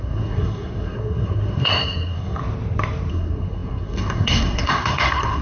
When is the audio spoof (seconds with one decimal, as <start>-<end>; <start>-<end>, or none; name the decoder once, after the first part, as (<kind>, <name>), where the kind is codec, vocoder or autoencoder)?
0.0-2.4 (codec, SNAC); 3.1-5.4